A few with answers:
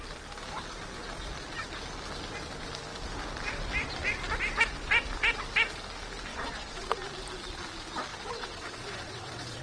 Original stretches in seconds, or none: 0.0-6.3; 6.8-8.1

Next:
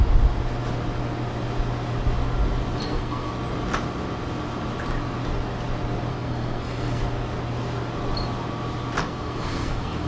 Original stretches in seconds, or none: 0.0-2.8; 3.3-6.1; 7.0-9.0